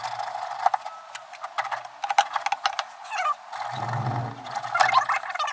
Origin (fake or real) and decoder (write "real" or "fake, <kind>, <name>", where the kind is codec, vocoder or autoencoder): real